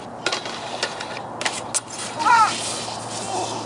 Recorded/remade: recorded